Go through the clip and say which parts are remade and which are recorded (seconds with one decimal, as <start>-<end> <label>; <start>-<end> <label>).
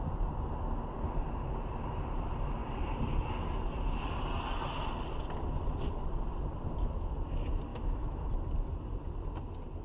0.0-7.7 recorded; 7.7-8.3 remade; 8.3-9.8 recorded